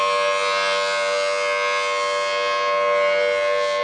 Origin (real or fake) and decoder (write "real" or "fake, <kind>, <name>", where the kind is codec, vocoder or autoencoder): real